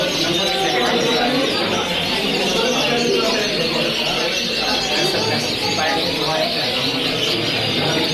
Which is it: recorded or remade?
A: recorded